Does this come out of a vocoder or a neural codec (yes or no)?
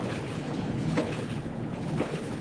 yes